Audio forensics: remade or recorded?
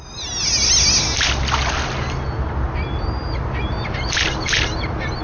recorded